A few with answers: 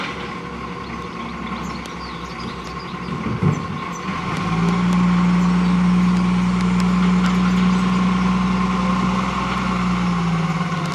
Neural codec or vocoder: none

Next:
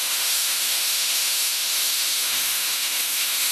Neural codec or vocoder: autoencoder, DAC-VAE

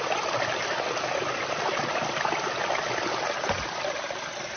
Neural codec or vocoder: none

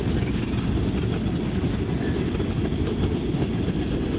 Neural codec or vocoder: none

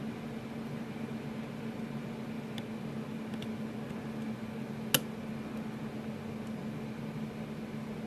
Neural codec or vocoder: none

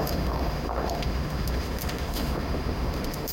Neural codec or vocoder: autoencoder, DAC-VAE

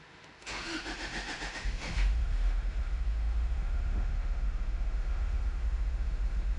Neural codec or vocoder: autoencoder, DAC-VAE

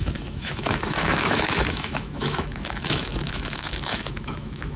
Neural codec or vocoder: autoencoder, DAC-VAE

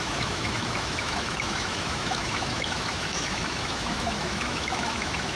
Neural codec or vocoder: autoencoder, DAC-VAE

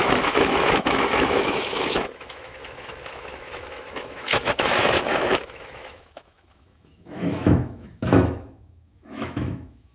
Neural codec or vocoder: autoencoder, DAC-VAE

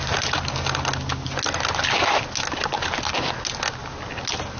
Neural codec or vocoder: none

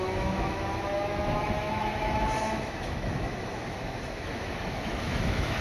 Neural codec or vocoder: autoencoder, DAC-VAE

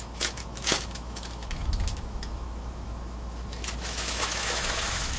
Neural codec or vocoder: autoencoder, DAC-VAE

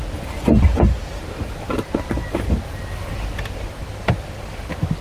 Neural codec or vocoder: none